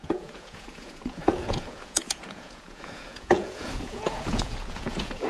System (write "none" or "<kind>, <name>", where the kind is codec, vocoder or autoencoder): vocoder, Vocos